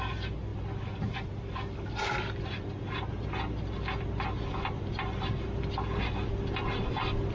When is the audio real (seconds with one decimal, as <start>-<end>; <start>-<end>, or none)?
0.0-7.3